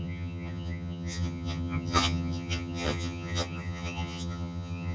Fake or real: fake